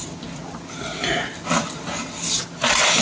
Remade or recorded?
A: recorded